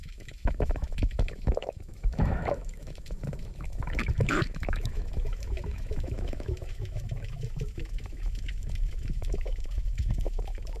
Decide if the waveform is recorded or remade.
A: remade